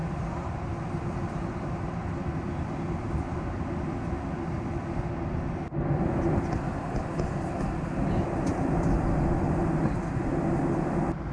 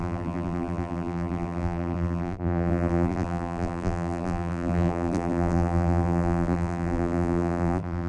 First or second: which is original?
first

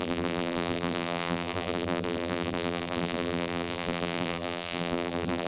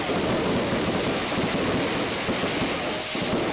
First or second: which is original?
second